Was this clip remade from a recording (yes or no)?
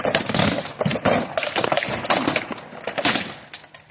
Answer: no